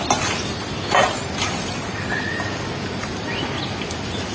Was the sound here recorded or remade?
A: recorded